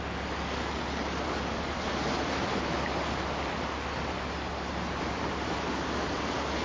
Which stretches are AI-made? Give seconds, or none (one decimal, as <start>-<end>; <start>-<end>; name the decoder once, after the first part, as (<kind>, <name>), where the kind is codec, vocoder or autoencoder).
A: none

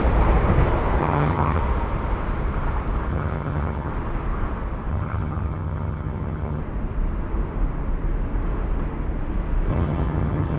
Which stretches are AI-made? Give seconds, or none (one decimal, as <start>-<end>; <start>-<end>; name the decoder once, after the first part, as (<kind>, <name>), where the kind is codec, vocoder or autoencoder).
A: 1.0-1.6 (vocoder, HiFi-GAN); 3.1-3.9; 4.9-6.6; 9.7-10.6

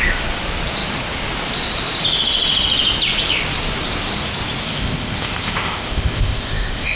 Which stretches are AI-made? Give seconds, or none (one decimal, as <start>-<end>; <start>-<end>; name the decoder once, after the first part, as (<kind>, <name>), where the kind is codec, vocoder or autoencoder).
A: 4.6-7.0 (codec, ZipCodec)

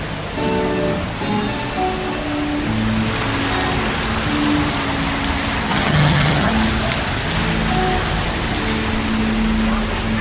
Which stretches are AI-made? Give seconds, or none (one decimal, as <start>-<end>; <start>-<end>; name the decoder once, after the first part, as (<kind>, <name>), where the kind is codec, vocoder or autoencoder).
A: 5.7-6.5 (vocoder, HiFi-GAN)